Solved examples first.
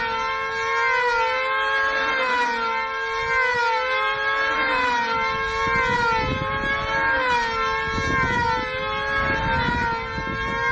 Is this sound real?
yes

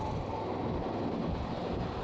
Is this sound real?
yes